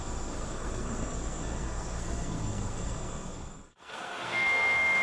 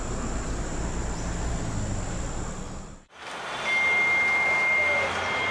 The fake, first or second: first